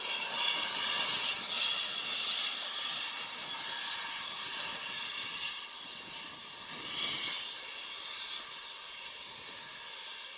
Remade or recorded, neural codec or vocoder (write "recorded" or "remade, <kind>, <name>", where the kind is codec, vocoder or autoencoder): recorded